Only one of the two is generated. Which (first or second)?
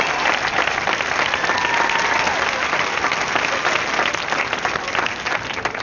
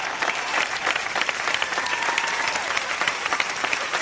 second